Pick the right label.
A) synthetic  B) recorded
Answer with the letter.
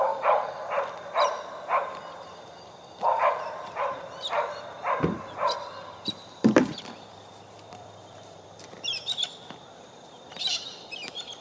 A